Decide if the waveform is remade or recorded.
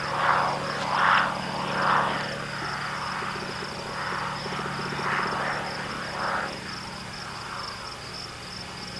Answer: recorded